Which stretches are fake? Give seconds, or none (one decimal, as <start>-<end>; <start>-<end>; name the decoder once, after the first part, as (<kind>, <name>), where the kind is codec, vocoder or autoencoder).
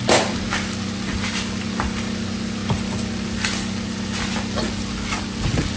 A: none